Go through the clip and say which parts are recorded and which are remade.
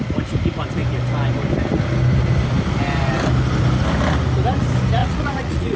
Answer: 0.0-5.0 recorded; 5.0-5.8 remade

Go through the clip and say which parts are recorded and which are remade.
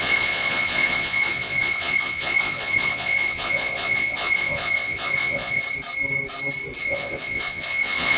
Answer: 0.0-5.6 remade; 5.6-6.8 recorded; 6.8-8.2 remade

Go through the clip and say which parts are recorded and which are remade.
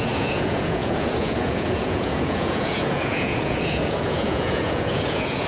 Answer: 0.0-5.5 remade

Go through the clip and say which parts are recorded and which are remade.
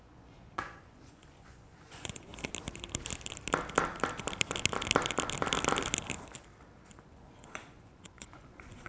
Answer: 0.0-2.3 remade; 2.3-7.0 recorded; 7.0-8.9 remade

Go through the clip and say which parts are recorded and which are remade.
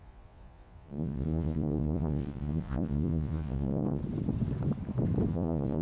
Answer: 0.0-4.0 remade; 4.0-5.3 recorded; 5.3-5.8 remade